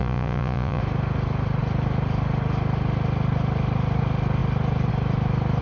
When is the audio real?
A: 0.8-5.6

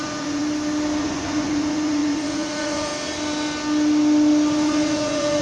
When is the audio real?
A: 0.4-1.0; 2.9-4.5